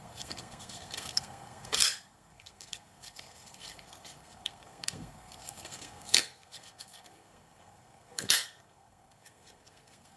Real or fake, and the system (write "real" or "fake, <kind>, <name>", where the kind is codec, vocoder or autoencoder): fake, codec, SNAC